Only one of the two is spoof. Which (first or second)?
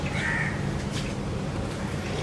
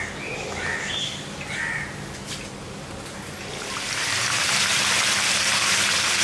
first